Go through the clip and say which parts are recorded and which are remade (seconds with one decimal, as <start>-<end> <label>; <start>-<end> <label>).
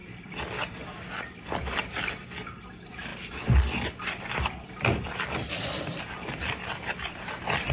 0.0-3.1 remade; 3.1-4.2 recorded; 4.2-7.7 remade